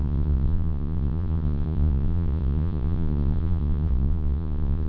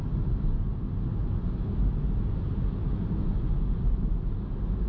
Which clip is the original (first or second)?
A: second